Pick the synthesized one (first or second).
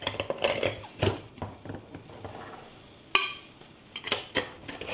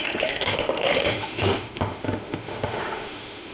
second